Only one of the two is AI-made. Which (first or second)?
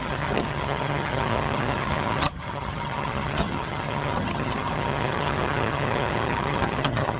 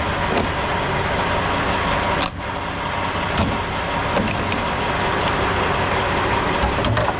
first